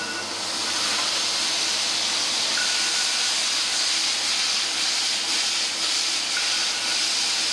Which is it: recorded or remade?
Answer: recorded